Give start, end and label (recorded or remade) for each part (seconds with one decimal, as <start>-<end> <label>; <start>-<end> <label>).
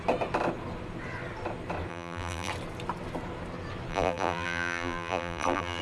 0.0-1.9 recorded; 1.9-2.5 remade; 2.5-3.9 recorded; 3.9-5.8 remade